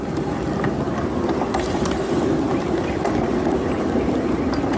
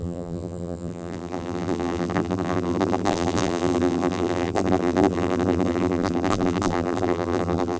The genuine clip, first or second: first